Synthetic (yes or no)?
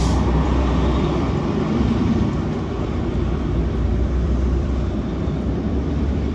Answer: yes